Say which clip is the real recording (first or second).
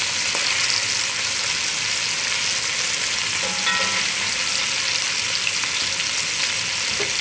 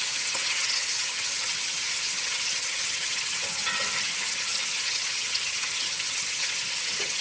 first